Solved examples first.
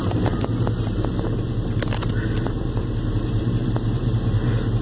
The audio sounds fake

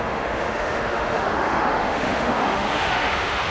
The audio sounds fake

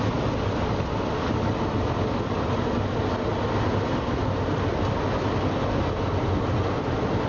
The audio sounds real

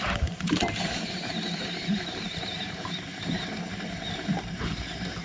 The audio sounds fake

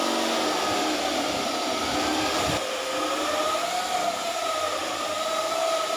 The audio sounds real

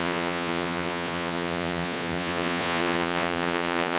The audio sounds fake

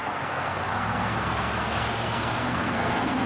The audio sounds fake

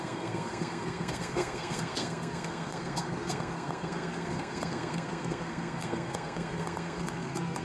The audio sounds fake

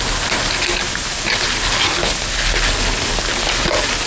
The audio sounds real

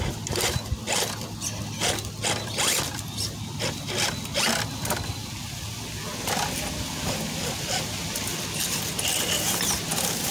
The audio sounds real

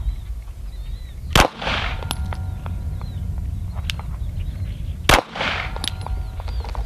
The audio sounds real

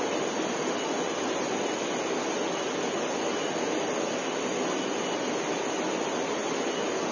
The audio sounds real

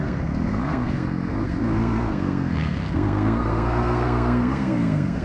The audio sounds fake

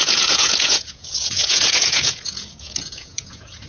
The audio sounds fake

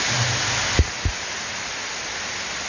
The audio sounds real